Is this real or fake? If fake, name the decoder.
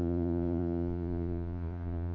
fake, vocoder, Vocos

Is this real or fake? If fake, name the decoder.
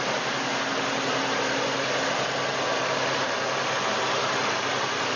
real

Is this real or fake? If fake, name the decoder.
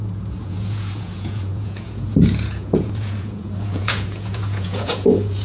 fake, vocoder, Vocos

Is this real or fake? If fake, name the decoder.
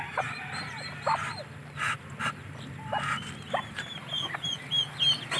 real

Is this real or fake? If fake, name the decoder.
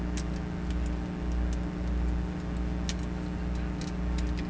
real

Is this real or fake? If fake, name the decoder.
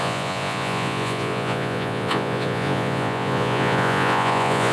fake, vocoder, Vocos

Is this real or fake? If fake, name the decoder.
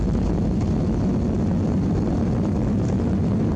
real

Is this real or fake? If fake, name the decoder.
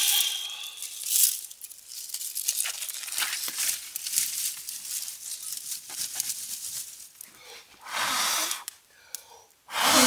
real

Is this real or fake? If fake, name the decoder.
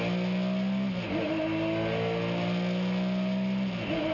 real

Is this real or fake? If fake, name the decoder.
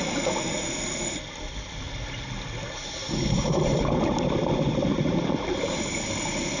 real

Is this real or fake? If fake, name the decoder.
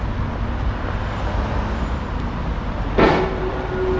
real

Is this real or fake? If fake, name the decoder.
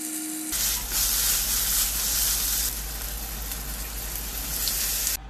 real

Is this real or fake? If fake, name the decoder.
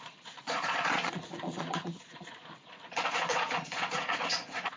fake, vocoder, Vocos